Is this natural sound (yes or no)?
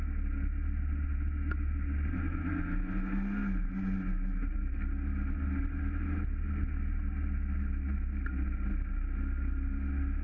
yes